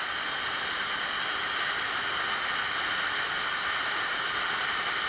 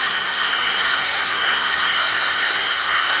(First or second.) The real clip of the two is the first